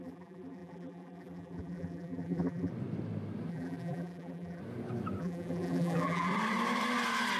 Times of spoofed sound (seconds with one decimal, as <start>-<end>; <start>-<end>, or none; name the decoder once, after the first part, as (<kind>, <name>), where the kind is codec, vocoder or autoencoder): 0.0-2.7 (vocoder, BigVGAN v2); 3.5-4.6; 5.2-6.3